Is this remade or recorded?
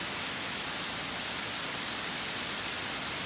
recorded